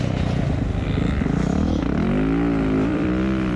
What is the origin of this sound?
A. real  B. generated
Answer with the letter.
B